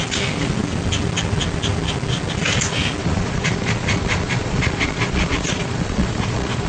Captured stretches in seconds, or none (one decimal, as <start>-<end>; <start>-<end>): 0.0-3.0